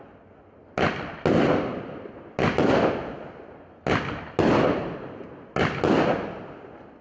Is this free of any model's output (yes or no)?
yes